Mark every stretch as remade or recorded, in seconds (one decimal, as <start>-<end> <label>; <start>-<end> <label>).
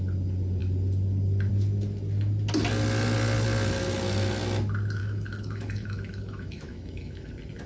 0.0-5.0 recorded; 5.0-7.3 remade; 7.3-7.7 recorded